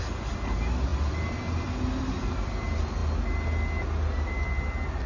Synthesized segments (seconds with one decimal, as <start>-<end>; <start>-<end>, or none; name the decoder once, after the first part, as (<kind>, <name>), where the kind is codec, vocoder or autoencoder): none